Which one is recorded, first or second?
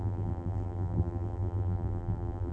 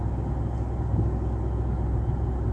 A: second